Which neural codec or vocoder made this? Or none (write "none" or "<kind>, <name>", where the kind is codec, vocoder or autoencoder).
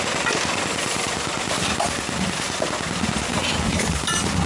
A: none